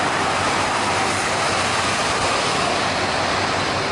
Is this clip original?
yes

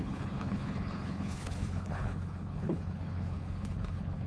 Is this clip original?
no